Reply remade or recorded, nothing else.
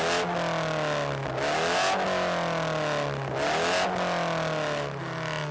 recorded